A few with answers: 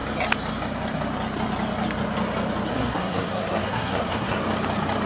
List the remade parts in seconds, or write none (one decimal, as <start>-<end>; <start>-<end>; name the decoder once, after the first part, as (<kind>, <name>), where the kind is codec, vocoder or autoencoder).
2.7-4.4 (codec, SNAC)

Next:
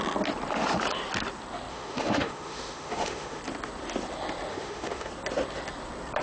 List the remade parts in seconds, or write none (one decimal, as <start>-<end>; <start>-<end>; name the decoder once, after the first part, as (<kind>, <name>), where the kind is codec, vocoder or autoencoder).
1.7-3.4 (autoencoder, DAC-VAE); 4.5-5.1

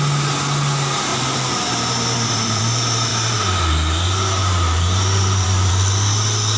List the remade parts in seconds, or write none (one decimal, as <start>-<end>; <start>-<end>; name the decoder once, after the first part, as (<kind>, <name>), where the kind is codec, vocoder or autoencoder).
1.1-2.6 (vocoder, BigVGAN v2); 3.1-3.7; 4.4-5.7

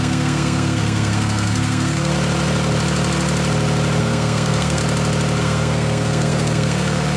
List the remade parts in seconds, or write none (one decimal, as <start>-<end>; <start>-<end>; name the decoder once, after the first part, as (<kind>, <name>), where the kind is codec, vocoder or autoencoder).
0.0-2.1 (codec, SNAC); 4.0-4.8; 5.4-7.2